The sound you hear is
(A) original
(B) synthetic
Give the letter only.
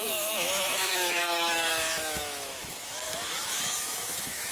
B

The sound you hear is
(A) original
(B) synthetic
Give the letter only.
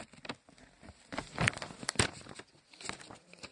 A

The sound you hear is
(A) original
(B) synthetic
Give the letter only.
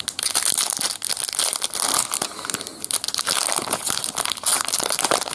A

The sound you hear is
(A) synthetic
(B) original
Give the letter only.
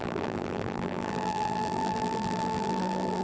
A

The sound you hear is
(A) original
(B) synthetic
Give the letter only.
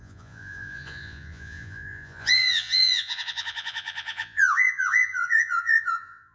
B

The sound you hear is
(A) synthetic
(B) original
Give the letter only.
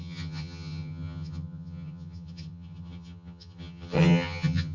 A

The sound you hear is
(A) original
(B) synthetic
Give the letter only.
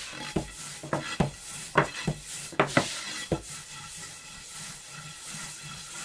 A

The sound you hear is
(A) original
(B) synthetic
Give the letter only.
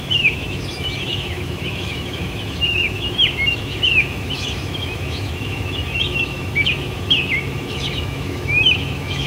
B